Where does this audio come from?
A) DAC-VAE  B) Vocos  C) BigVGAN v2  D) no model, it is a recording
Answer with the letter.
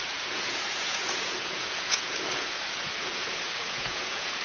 B